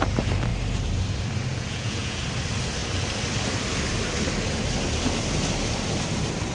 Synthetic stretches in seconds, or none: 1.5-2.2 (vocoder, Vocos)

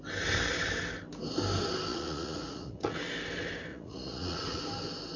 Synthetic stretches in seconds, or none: 1.9-3.0 (vocoder, Vocos); 3.7-4.6

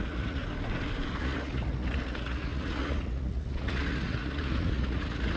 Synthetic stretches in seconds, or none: 0.0-0.4 (vocoder, Vocos); 1.1-5.4

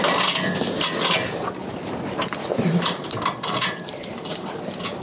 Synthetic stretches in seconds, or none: 1.6-4.6 (vocoder, BigVGAN v2)

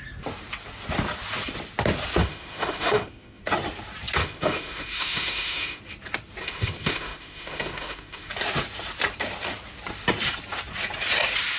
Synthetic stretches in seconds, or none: 2.2-3.4 (autoencoder, DAC-VAE); 4.2-5.8; 6.4-8.3

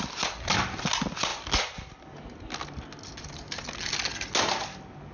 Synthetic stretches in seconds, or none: none

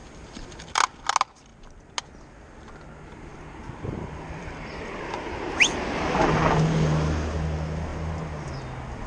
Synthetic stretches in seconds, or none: 0.0-0.7 (vocoder, BigVGAN v2); 3.3-5.0

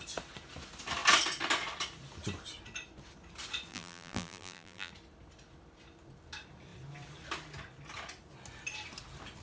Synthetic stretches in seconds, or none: 3.7-4.9 (vocoder, BigVGAN v2)